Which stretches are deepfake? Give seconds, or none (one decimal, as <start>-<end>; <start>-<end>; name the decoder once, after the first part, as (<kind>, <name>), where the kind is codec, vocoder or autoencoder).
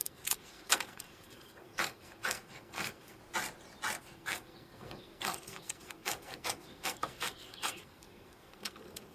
0.0-3.2 (codec, SNAC); 4.0-9.1